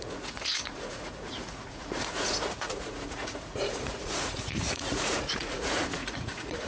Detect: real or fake fake